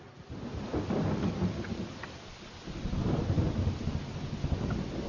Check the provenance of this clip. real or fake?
real